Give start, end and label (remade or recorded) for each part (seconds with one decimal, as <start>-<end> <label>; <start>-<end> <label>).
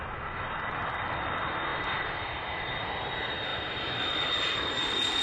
0.0-1.7 recorded; 1.7-2.5 remade; 2.5-3.5 recorded; 3.5-4.8 remade; 4.8-5.2 recorded